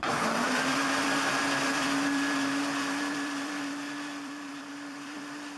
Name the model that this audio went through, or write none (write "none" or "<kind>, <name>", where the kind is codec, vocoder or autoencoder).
vocoder, BigVGAN v2